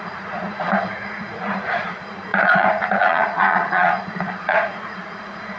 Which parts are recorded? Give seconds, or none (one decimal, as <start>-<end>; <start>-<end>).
none